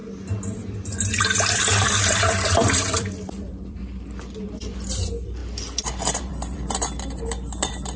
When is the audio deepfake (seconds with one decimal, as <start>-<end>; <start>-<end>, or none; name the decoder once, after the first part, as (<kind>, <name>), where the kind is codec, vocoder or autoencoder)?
1.2-5.4 (vocoder, BigVGAN v2); 6.2-8.0